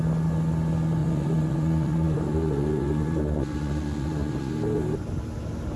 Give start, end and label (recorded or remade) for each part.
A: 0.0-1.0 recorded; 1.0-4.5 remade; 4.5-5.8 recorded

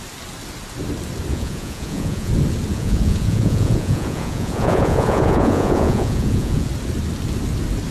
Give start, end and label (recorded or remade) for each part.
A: 0.0-1.3 recorded; 1.3-2.3 remade; 2.3-2.7 recorded; 2.7-6.7 remade; 6.7-7.9 recorded

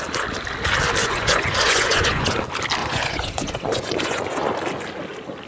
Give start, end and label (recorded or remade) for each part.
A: 0.0-1.0 recorded; 1.0-2.4 remade; 2.4-2.8 recorded; 2.8-4.5 remade; 4.5-5.5 recorded

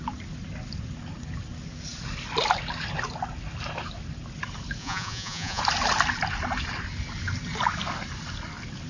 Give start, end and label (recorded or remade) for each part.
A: 0.0-4.8 recorded; 4.8-5.6 remade; 5.6-8.9 recorded